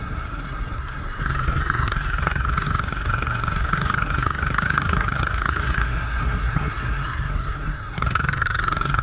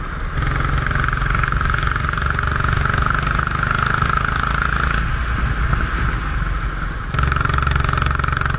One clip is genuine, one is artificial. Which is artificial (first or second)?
first